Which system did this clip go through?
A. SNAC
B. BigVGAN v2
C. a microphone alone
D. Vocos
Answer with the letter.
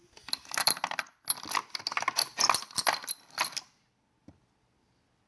C